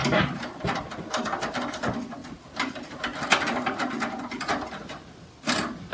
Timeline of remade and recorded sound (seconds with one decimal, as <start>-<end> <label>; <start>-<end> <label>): 0.0-0.9 remade; 0.9-2.2 recorded; 2.2-4.4 remade; 4.4-5.9 recorded